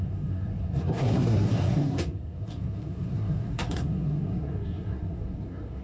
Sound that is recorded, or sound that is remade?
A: remade